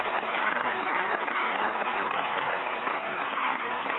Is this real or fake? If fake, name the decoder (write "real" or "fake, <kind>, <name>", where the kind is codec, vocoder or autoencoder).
fake, codec, SNAC